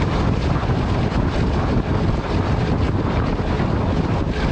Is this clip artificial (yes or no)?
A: no